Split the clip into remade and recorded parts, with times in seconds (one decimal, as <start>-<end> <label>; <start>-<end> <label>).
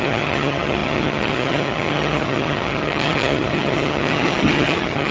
0.0-5.1 remade